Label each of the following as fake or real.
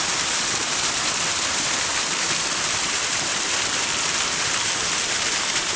fake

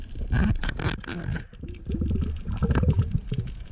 real